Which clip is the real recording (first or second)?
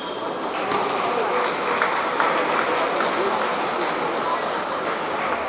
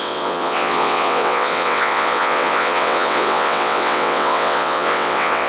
first